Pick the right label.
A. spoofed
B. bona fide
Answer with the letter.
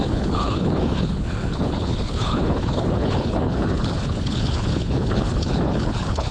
A